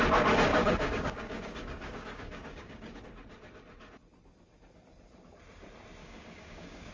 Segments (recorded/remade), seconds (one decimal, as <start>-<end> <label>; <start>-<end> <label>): 0.0-0.5 recorded; 0.5-3.0 remade; 3.0-6.0 recorded; 6.0-6.9 remade

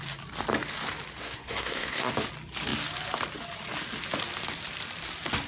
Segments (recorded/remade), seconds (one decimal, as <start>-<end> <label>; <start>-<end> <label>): 0.0-1.2 recorded; 1.2-2.1 remade; 2.1-5.5 recorded